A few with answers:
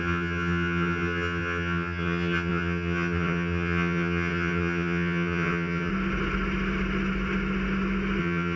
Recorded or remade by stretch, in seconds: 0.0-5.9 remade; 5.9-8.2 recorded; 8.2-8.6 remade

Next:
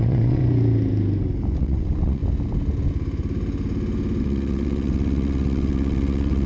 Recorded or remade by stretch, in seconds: 0.0-0.4 remade; 0.4-1.6 recorded; 1.6-2.2 remade; 2.2-4.2 recorded; 4.2-6.5 remade

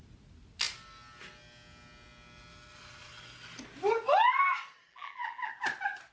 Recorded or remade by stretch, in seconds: 0.0-4.9 recorded; 4.9-5.5 remade; 5.5-6.1 recorded